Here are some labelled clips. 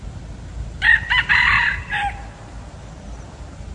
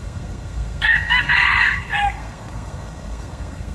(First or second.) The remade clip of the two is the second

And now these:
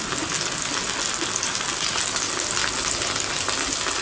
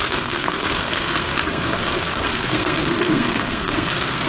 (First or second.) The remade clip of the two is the second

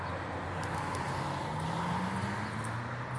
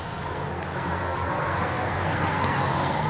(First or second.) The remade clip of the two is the second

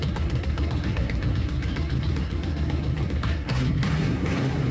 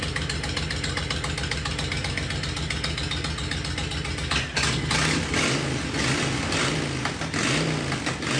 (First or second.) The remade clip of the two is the first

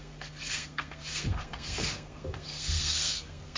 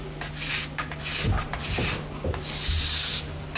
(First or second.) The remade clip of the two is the first